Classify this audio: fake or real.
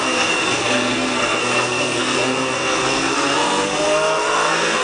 fake